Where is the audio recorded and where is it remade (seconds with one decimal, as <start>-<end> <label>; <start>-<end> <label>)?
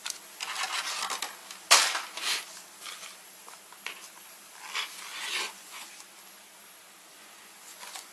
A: 0.0-5.1 recorded; 5.1-5.9 remade; 5.9-7.1 recorded; 7.1-8.1 remade